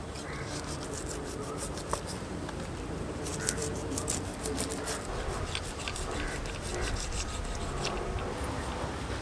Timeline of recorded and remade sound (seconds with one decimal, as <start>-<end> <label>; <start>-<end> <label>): 0.0-9.2 recorded